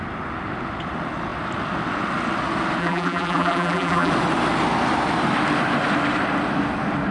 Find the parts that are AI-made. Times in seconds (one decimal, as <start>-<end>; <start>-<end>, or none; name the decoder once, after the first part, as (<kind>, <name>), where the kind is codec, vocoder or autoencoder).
2.8-4.1 (vocoder, BigVGAN v2)